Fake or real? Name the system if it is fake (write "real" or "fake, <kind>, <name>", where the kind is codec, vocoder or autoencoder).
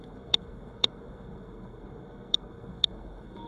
fake, codec, SNAC